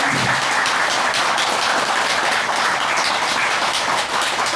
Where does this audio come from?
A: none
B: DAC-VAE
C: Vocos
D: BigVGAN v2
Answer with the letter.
A